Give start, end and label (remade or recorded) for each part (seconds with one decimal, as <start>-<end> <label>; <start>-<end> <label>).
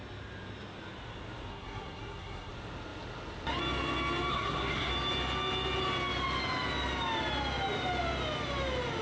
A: 0.0-1.5 recorded; 1.5-2.5 remade; 2.5-4.3 recorded; 4.3-4.9 remade; 4.9-9.0 recorded